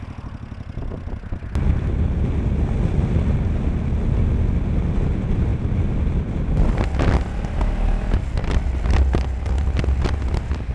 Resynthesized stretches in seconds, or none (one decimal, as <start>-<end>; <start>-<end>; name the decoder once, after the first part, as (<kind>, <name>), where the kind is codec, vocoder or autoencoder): none